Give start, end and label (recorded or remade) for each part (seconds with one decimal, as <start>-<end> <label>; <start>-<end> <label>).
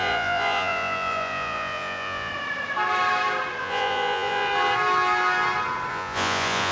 0.0-2.3 remade; 2.3-3.6 recorded; 3.6-4.5 remade; 4.5-5.9 recorded; 5.9-6.7 remade